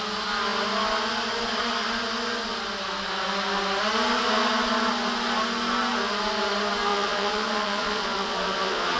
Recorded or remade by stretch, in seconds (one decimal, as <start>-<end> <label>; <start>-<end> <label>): 0.0-6.9 recorded; 6.9-9.0 remade